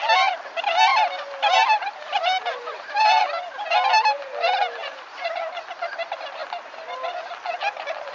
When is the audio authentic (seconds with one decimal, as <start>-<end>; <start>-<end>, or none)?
0.0-0.9; 3.2-4.8; 5.5-8.1